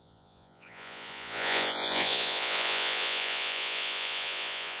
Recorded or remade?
remade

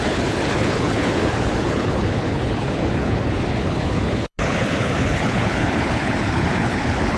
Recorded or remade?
remade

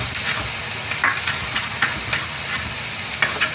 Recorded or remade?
recorded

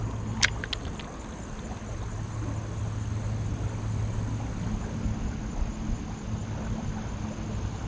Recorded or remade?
recorded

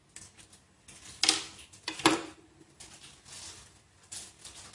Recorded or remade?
recorded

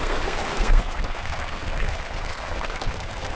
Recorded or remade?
remade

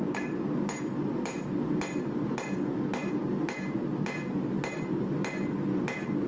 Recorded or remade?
recorded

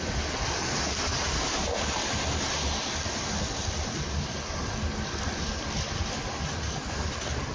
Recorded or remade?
recorded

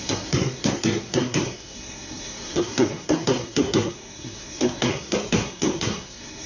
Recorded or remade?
remade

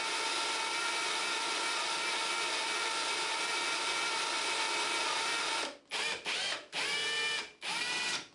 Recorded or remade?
recorded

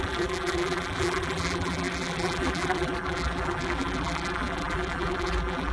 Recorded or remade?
remade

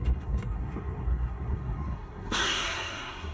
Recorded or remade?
remade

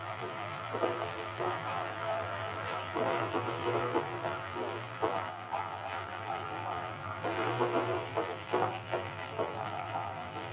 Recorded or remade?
remade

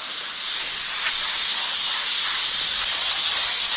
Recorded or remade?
recorded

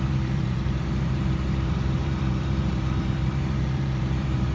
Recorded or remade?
remade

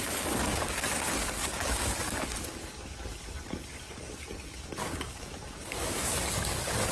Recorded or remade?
remade